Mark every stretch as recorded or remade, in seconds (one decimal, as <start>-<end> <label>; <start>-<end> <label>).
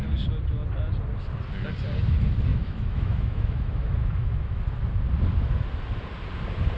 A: 0.0-2.5 recorded; 2.5-4.6 remade; 4.6-6.8 recorded